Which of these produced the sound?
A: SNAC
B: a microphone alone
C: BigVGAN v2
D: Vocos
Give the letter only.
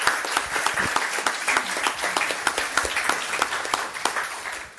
B